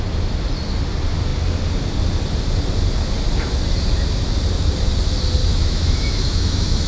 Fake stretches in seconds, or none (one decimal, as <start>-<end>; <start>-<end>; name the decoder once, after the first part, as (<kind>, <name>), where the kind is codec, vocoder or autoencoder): 5.4-6.9 (autoencoder, DAC-VAE)